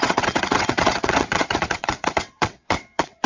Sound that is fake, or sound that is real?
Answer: fake